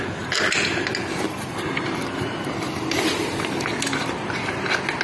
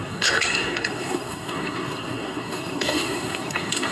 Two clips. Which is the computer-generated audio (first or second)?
second